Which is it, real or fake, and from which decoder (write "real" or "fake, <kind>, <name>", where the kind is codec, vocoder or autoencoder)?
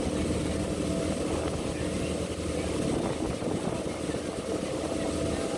real